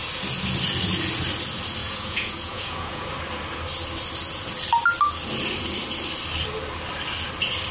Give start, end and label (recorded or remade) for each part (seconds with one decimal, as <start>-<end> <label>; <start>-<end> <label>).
0.0-1.8 recorded; 1.8-3.1 remade; 3.1-7.7 recorded

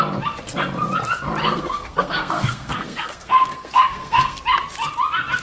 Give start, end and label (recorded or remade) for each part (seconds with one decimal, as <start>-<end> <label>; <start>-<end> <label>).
0.0-1.4 recorded; 1.4-4.4 remade; 4.4-5.4 recorded

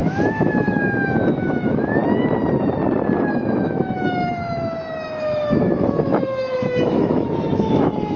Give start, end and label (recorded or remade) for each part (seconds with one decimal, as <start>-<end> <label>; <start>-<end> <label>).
0.0-2.0 remade; 2.0-3.3 recorded; 3.3-8.2 remade